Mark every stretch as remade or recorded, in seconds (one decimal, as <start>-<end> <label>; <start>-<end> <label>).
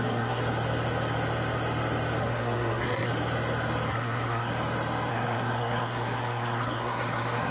0.0-0.4 remade; 0.4-2.2 recorded; 2.2-3.1 remade; 3.1-3.9 recorded; 3.9-4.5 remade; 4.5-5.1 recorded; 5.1-7.5 remade